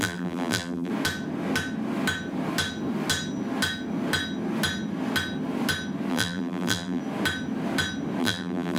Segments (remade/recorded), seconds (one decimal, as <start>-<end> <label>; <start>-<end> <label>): 0.0-0.9 remade; 0.9-6.1 recorded; 6.1-7.0 remade; 7.0-8.2 recorded; 8.2-8.8 remade